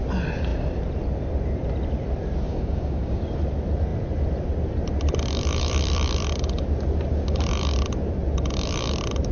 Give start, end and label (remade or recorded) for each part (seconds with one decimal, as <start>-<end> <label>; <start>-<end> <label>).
0.0-2.5 recorded; 2.5-3.2 remade; 3.2-9.3 recorded